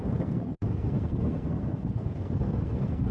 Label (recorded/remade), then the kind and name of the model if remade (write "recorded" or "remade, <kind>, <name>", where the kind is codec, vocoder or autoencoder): remade, codec, SNAC